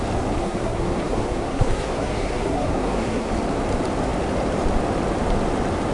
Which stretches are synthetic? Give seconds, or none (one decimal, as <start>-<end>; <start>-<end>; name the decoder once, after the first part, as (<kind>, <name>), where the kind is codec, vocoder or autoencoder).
0.4-3.3 (codec, SNAC)